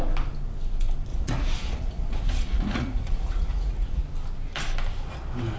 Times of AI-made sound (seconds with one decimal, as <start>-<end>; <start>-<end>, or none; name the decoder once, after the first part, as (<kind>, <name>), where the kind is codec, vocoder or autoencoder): 1.1-4.0 (vocoder, Vocos)

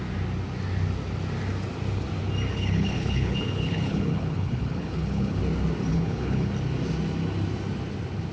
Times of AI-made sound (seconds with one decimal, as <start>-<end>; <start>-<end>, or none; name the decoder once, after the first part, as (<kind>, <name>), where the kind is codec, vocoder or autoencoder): 2.5-5.4 (codec, HILCodec); 5.9-6.5